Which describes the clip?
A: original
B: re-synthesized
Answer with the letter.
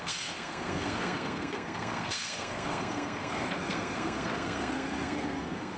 B